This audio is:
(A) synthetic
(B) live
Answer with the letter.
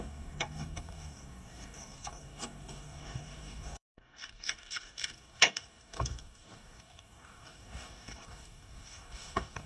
A